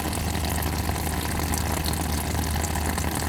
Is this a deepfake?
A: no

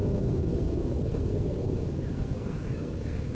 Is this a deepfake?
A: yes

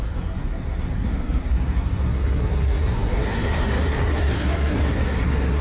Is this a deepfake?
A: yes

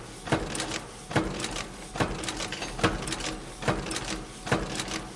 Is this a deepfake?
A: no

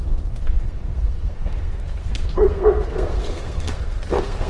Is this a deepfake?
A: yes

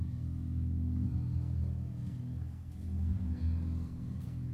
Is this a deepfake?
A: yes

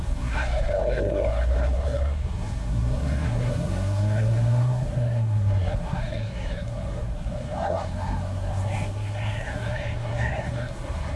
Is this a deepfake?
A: yes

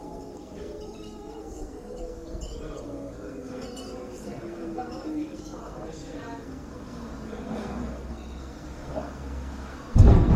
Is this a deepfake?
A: yes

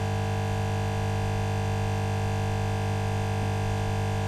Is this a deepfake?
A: no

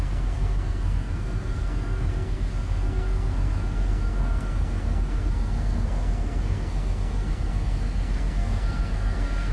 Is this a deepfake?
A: yes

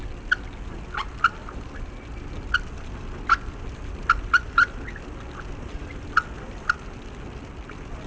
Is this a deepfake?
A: no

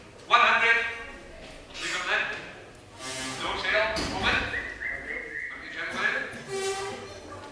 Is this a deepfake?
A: no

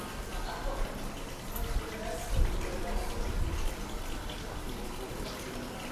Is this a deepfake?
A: no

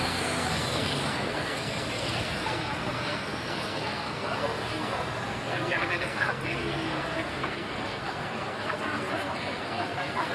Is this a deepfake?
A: yes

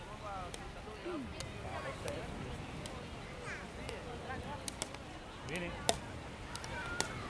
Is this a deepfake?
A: no